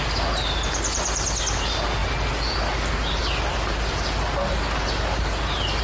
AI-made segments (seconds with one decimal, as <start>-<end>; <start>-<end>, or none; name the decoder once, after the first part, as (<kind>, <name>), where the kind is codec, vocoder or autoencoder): none